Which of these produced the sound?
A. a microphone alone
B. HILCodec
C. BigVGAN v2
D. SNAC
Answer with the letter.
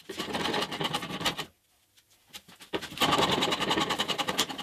A